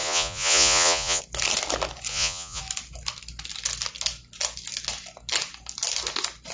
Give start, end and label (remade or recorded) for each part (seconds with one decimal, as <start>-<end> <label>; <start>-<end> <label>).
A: 0.0-1.2 remade; 1.2-2.1 recorded; 2.1-2.6 remade; 2.6-6.5 recorded